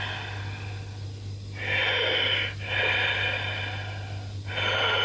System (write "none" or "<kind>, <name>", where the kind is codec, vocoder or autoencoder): none